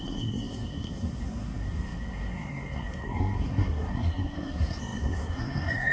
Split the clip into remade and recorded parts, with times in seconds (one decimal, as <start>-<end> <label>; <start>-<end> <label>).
0.0-5.9 remade